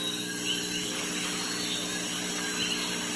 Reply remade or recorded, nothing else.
recorded